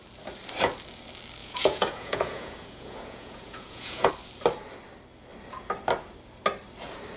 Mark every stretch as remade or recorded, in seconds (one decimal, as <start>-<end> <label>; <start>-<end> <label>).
0.0-1.4 recorded; 1.4-4.1 remade; 4.1-7.2 recorded